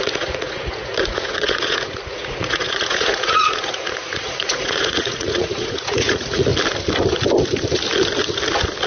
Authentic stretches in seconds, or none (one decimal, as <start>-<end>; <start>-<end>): 6.5-8.9